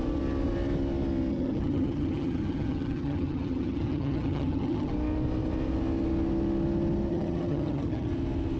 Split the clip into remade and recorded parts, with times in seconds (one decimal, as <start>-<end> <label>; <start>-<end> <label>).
0.0-1.3 recorded; 1.3-4.9 remade; 4.9-7.1 recorded; 7.1-8.1 remade; 8.1-8.6 recorded